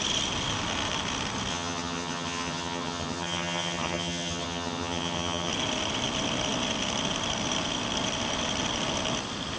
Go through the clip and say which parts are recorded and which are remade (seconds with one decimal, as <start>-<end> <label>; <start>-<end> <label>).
0.0-1.5 recorded; 1.5-5.5 remade; 5.5-9.6 recorded